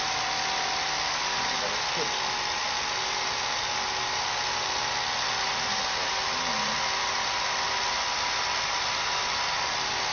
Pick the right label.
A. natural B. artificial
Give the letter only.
A